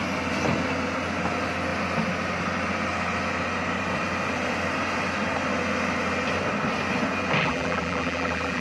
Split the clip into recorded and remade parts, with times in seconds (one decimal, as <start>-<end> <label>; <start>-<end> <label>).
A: 0.0-7.4 recorded; 7.4-8.6 remade